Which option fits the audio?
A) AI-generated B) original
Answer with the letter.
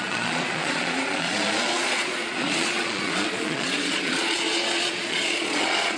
A